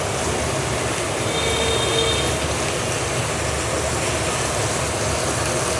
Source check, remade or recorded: recorded